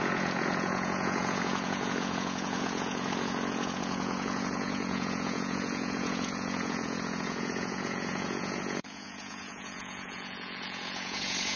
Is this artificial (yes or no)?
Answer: yes